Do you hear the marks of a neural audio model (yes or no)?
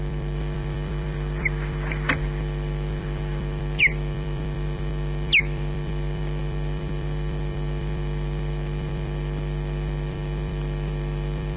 yes